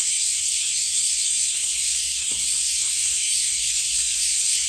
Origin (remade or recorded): remade